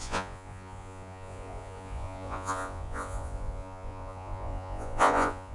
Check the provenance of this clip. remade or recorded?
remade